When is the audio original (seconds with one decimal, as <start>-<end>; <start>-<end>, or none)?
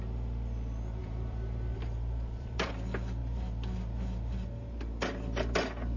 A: 0.0-1.0; 2.7-6.0